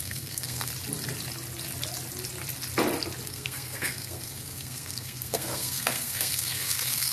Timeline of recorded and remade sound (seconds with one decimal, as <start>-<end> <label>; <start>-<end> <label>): 0.0-0.7 remade; 0.7-3.3 recorded; 3.3-7.1 remade